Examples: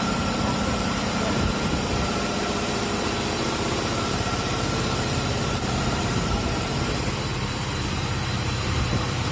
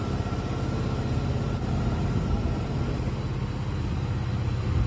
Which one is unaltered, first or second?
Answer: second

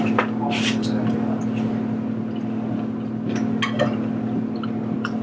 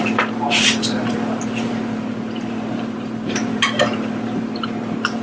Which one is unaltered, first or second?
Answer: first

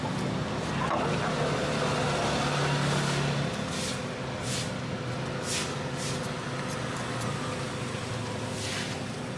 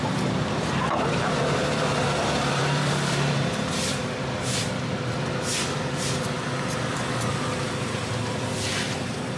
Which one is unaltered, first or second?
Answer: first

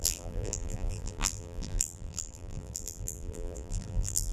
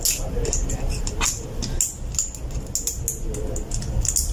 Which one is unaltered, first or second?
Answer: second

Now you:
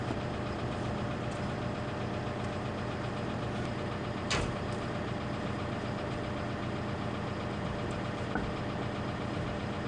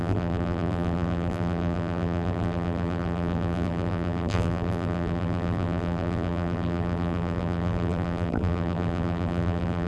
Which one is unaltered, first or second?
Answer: first